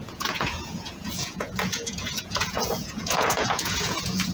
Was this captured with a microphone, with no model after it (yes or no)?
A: no